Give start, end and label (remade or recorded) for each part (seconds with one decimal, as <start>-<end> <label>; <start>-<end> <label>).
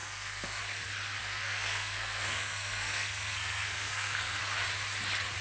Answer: 0.0-0.6 remade; 0.6-1.2 recorded; 1.2-4.4 remade; 4.4-5.4 recorded